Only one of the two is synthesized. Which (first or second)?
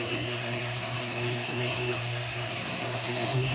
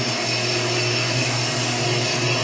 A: first